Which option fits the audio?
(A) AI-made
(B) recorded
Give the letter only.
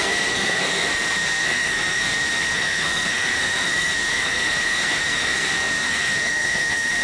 A